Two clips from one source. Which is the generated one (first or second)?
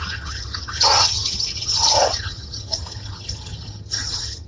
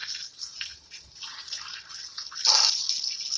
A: first